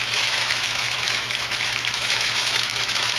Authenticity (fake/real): fake